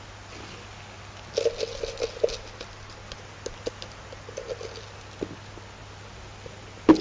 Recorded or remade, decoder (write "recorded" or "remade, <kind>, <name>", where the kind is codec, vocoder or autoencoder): recorded